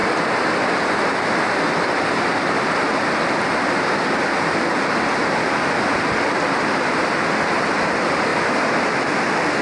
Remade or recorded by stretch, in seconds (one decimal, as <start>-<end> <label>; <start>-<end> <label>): 0.0-9.6 recorded